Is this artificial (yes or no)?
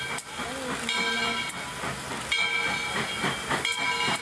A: no